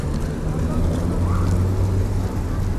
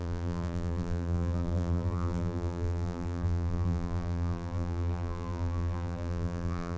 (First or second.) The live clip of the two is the first